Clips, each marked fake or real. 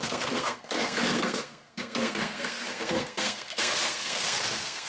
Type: fake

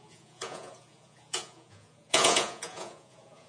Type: fake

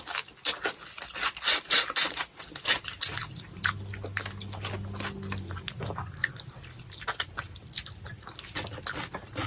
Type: real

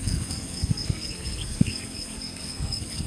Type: fake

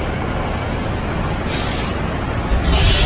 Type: real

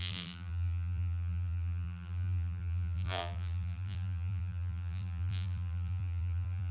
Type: fake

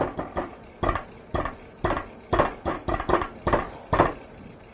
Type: real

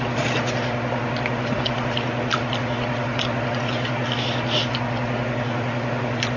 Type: real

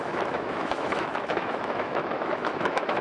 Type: fake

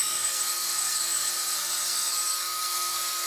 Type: fake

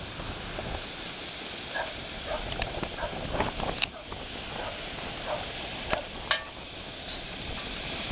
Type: real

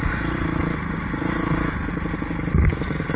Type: real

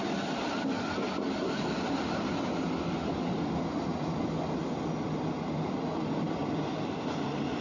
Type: real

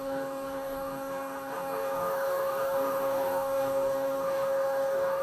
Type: fake